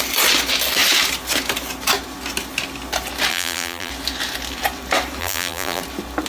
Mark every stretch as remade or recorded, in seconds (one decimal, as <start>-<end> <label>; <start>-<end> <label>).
0.0-3.3 recorded; 3.3-3.9 remade; 3.9-5.2 recorded; 5.2-5.8 remade; 5.8-6.3 recorded